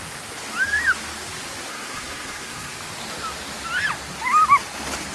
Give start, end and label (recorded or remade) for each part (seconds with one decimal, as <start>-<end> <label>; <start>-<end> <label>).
0.0-1.7 recorded; 1.7-2.7 remade; 2.7-5.1 recorded